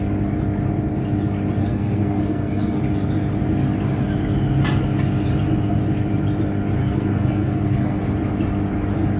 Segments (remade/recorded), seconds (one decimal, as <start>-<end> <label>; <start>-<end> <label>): 0.0-1.6 recorded; 1.6-2.8 remade; 2.8-6.8 recorded; 6.8-8.0 remade; 8.0-9.2 recorded